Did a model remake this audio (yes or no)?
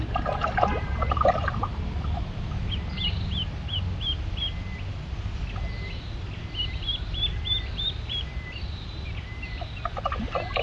no